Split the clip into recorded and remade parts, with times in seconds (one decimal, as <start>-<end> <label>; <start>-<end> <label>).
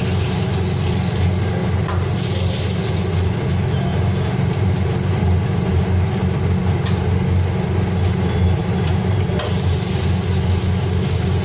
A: 0.0-3.9 recorded; 3.9-5.8 remade; 5.8-8.6 recorded; 8.6-9.9 remade; 9.9-11.4 recorded